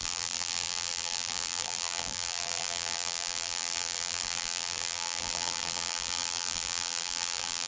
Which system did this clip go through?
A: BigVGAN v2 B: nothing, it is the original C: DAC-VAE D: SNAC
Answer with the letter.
A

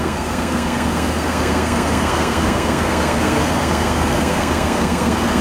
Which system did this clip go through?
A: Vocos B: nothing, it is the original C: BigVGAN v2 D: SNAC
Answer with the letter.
D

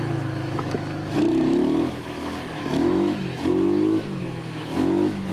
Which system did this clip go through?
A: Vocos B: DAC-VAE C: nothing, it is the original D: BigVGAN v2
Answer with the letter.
B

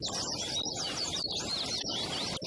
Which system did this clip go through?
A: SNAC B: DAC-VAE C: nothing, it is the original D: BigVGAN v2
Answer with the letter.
C